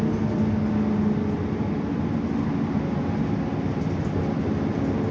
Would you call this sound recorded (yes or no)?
yes